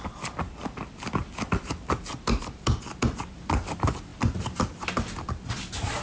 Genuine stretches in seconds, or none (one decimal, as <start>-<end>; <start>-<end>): 0.0-6.0